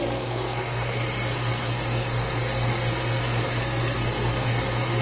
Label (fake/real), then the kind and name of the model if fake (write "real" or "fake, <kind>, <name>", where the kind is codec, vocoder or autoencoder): fake, codec, SNAC